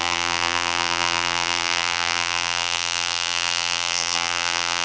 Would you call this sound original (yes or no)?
no